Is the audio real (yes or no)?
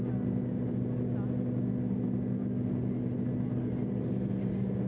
yes